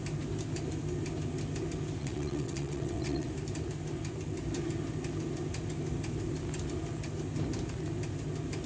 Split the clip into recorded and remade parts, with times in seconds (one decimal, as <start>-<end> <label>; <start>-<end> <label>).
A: 0.0-2.0 recorded; 2.0-3.3 remade; 3.3-8.7 recorded